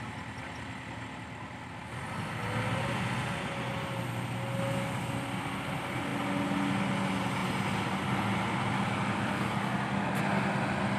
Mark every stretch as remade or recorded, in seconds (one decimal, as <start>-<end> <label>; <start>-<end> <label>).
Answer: 0.0-11.0 recorded